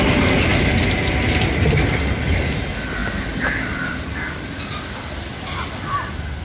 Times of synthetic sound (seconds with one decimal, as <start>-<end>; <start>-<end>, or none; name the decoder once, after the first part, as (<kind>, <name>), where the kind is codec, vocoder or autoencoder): none